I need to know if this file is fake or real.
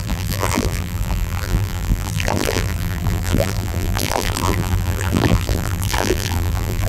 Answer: fake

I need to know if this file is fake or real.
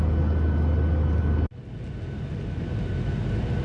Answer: real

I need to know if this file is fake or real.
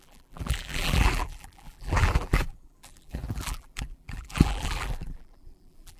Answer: fake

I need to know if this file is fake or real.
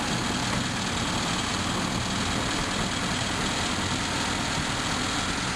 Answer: real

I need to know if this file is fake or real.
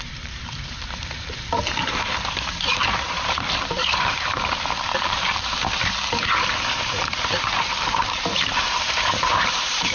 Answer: fake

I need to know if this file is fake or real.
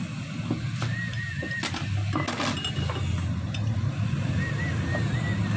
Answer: real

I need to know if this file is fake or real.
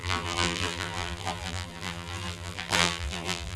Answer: fake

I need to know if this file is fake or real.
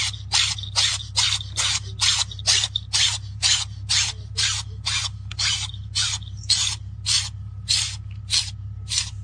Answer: real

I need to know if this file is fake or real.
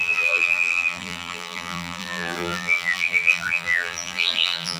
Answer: fake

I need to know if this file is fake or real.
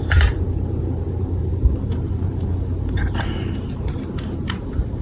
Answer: fake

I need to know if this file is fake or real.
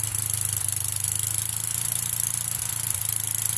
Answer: real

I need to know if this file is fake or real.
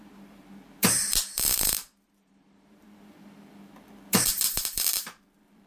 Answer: fake